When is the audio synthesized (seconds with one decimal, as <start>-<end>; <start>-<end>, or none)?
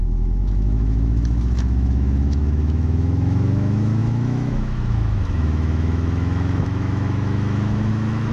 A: 0.0-8.3